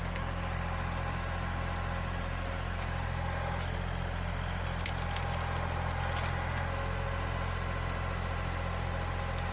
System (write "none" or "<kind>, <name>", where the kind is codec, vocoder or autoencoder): none